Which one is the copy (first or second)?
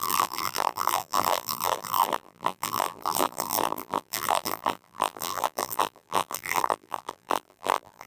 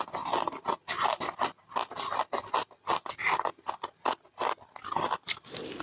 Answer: first